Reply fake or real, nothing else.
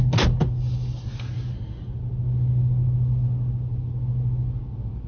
real